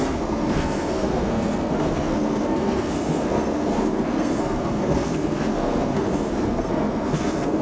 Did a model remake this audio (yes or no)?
yes